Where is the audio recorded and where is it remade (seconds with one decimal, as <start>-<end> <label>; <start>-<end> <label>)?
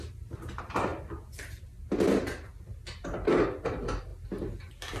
0.0-5.0 recorded